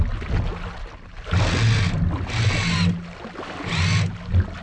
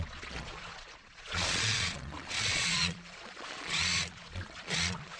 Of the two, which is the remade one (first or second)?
second